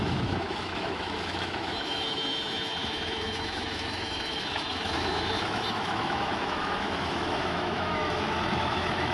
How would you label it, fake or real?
fake